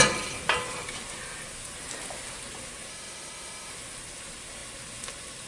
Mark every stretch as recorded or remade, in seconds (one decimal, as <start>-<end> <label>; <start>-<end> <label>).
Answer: 0.0-2.9 recorded; 2.9-3.7 remade; 3.7-5.5 recorded